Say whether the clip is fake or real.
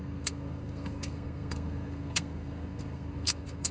fake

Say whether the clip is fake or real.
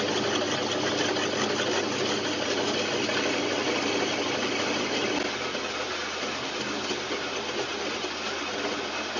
real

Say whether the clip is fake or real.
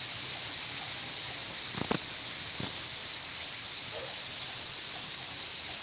real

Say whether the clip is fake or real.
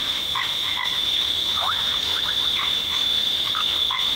fake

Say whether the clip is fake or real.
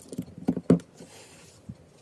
real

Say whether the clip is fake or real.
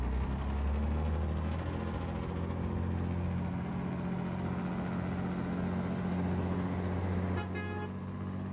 real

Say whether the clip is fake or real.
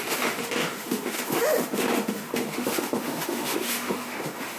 fake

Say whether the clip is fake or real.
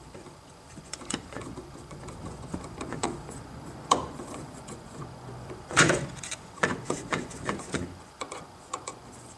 fake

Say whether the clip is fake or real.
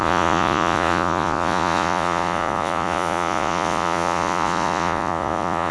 fake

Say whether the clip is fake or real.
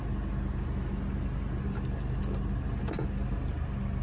real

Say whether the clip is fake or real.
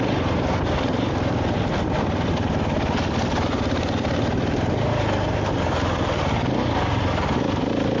real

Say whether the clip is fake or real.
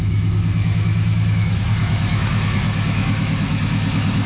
fake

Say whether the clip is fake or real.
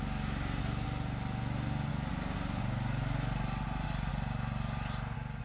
real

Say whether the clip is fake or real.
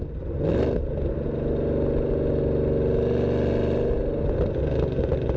real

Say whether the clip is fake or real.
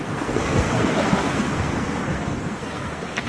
fake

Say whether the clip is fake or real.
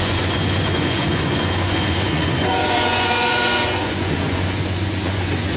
fake